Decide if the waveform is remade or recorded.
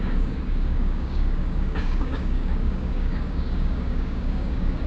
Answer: remade